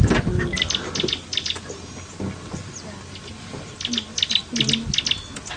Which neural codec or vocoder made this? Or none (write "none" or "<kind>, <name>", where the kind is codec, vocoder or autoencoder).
none